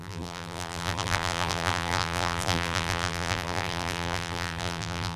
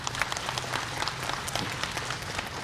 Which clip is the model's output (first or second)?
first